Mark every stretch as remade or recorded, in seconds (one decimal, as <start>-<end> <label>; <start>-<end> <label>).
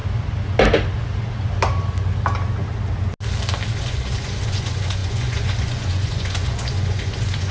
0.0-3.8 recorded; 3.8-7.5 remade